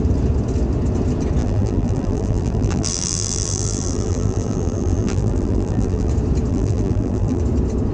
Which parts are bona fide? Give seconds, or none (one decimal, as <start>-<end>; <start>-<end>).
0.0-1.4; 6.1-6.5; 7.4-7.9